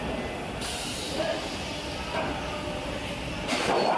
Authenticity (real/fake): real